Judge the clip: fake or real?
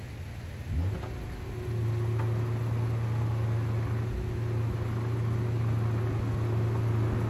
real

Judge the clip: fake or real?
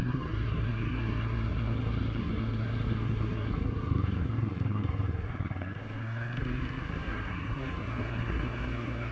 fake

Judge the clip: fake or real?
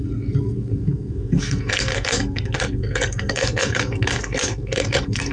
fake